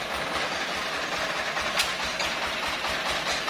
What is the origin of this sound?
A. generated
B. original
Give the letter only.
B